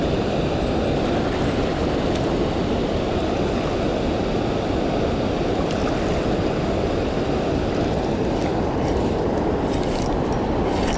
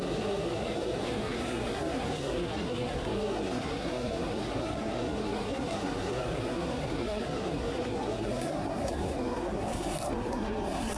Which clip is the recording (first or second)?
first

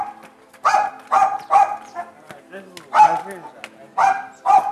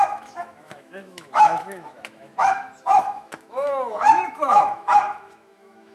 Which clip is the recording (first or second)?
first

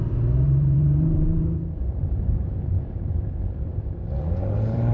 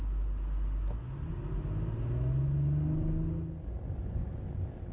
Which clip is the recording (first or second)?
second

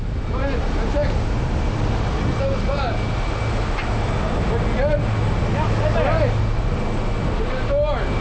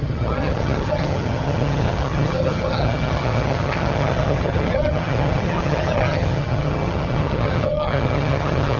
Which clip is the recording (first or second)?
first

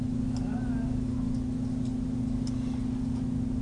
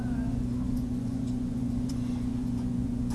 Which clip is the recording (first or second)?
first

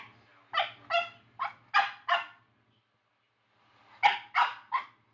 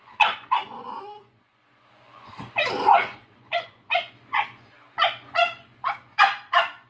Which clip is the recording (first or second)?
first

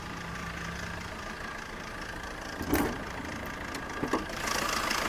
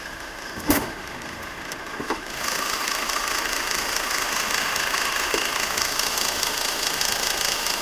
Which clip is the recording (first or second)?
first